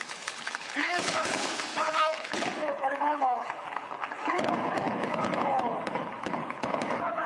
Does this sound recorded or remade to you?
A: remade